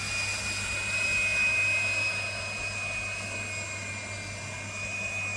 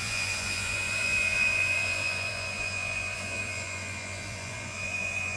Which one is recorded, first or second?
first